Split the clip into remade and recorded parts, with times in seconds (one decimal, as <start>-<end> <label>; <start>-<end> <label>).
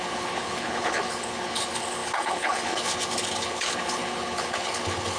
0.0-5.2 remade